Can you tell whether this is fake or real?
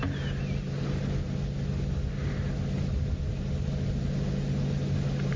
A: real